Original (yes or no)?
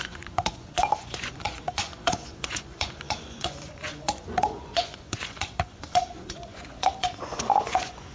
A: no